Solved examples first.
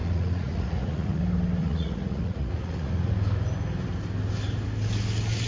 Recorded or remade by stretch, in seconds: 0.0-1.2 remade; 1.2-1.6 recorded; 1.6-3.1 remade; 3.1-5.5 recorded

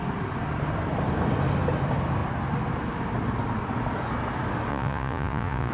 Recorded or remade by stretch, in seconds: 0.0-4.7 recorded; 4.7-5.7 remade

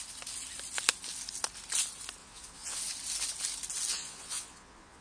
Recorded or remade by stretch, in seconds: 0.0-2.2 recorded; 2.2-2.8 remade; 2.8-3.9 recorded; 3.9-5.0 remade

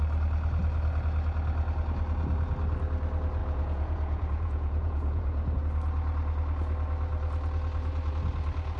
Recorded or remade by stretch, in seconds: 0.0-3.4 recorded; 3.4-5.6 remade; 5.6-8.8 recorded